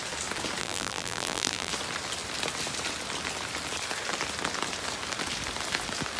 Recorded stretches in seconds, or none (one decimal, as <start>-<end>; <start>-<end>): 0.0-0.6; 1.7-6.2